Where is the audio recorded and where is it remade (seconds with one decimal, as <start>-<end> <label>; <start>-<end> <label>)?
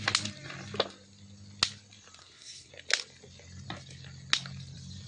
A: 0.0-2.2 recorded; 2.2-2.7 remade; 2.7-5.1 recorded